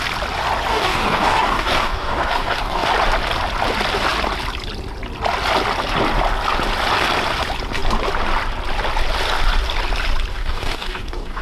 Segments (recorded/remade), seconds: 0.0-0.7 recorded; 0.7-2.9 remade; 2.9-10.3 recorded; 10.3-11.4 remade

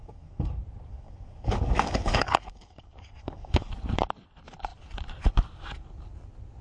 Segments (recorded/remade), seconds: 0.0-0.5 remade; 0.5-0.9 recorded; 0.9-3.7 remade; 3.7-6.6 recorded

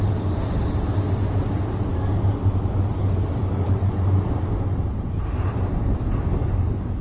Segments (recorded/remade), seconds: 0.0-1.9 recorded; 1.9-3.9 remade; 3.9-6.3 recorded; 6.3-7.0 remade

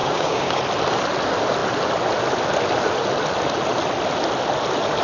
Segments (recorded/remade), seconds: 0.0-0.6 remade; 0.6-5.0 recorded

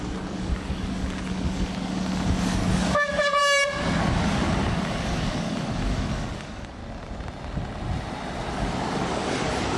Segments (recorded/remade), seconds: 0.0-3.4 remade; 3.4-4.0 recorded; 4.0-6.8 remade; 6.8-8.5 recorded; 8.5-9.8 remade